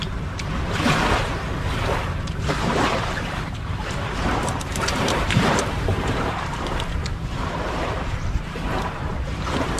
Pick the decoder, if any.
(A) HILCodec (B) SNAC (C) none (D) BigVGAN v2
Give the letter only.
D